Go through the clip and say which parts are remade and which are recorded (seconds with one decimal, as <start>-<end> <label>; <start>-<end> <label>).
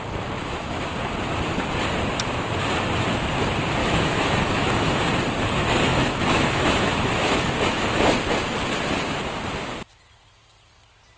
0.0-0.4 recorded; 0.4-0.9 remade; 0.9-3.8 recorded; 3.8-5.0 remade; 5.0-5.9 recorded; 5.9-8.0 remade; 8.0-11.2 recorded